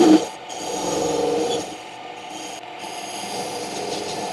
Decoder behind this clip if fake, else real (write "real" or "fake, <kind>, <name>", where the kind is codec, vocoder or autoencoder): real